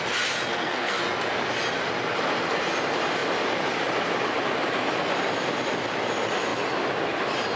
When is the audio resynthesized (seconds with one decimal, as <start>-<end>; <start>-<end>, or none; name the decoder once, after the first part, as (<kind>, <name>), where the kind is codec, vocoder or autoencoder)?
0.5-1.0 (codec, SNAC)